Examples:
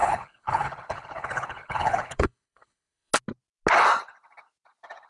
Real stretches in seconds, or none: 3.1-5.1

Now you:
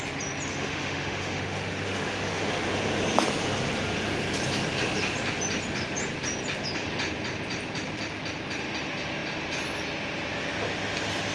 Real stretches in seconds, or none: 0.0-0.5; 2.5-11.3

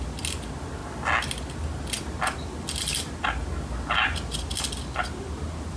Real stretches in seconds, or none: 0.0-5.8